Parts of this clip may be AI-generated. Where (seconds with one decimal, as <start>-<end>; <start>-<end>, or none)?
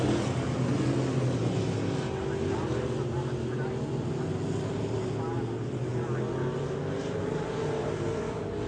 none